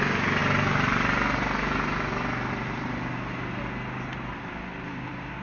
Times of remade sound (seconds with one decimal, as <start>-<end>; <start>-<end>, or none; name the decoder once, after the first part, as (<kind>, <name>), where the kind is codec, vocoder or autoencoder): none